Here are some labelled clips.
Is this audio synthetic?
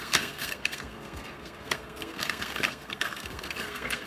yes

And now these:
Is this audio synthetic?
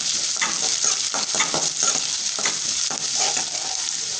no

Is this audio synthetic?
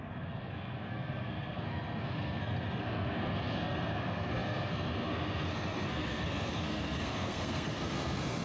yes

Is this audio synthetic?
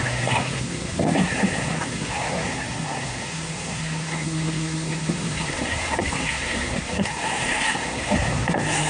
yes